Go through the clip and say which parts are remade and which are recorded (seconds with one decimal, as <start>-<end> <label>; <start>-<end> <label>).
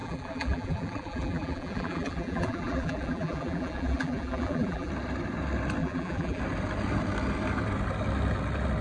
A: 0.0-4.9 remade; 4.9-5.8 recorded; 5.8-6.4 remade; 6.4-8.8 recorded